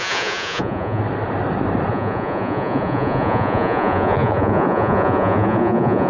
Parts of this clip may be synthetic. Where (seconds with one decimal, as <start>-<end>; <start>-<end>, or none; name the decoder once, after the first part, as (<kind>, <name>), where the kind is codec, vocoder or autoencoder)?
0.0-1.0 (vocoder, Vocos); 1.9-6.1